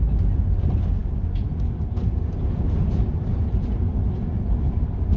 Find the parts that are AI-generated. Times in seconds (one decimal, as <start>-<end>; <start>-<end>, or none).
none

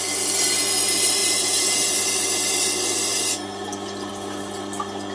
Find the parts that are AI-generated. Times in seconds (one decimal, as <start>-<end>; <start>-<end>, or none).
none

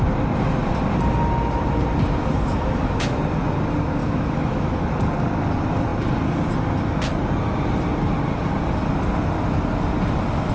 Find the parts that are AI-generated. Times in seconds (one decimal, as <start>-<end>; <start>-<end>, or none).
2.5-3.2; 4.0-4.8

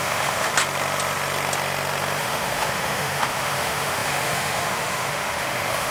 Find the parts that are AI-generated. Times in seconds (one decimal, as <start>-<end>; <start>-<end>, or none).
0.0-0.5; 2.2-5.9

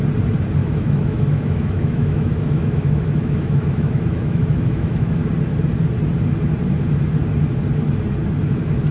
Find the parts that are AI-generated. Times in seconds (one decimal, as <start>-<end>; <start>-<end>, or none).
0.6-5.2

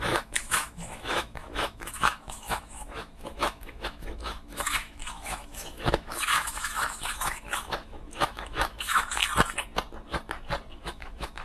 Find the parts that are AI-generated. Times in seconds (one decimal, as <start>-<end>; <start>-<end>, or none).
0.0-9.2; 10.8-11.4

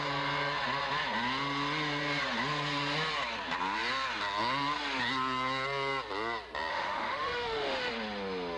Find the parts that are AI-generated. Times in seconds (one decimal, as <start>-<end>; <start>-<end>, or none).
6.7-7.9

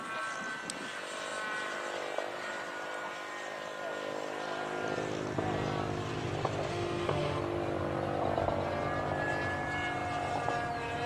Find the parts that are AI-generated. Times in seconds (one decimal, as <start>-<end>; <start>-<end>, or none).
6.7-7.4